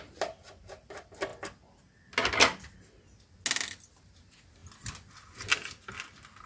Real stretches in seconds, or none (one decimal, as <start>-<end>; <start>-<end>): 0.0-6.5